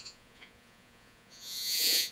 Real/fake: fake